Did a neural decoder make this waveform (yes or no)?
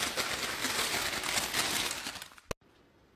no